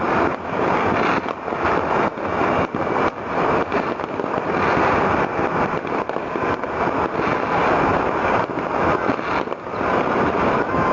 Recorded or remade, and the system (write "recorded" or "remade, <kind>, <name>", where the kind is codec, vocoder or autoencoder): recorded